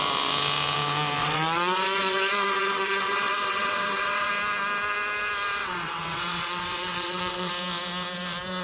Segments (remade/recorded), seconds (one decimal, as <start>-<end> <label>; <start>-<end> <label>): 0.0-1.2 recorded; 1.2-4.3 remade; 4.3-5.6 recorded; 5.6-7.5 remade; 7.5-8.6 recorded